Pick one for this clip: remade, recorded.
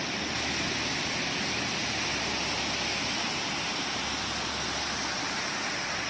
recorded